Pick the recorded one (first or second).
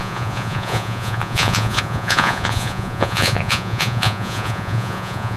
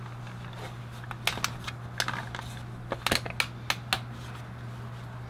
second